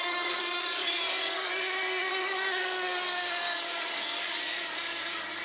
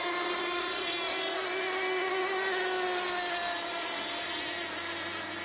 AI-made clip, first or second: first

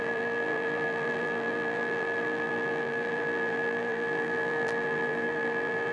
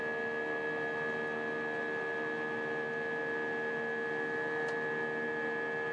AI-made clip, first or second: first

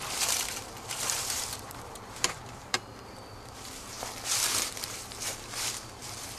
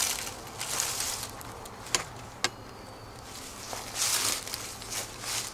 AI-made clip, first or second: first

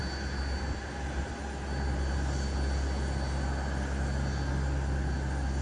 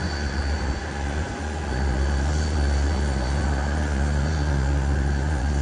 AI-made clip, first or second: second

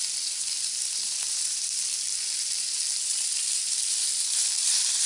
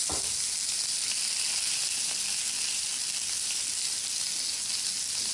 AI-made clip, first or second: first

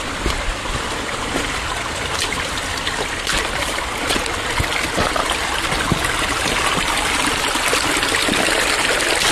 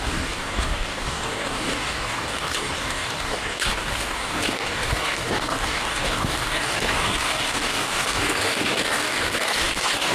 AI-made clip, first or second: second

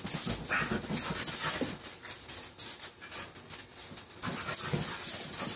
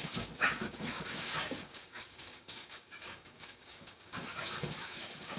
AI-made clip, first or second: second